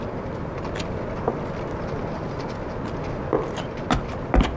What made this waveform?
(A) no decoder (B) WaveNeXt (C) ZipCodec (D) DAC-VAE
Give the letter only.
A